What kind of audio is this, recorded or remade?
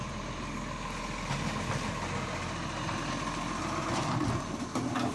recorded